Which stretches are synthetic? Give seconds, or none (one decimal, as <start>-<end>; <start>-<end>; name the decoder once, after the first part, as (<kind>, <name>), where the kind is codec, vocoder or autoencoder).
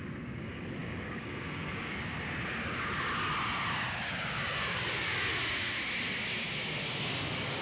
0.0-2.1 (codec, DAC); 3.9-5.3; 7.1-7.6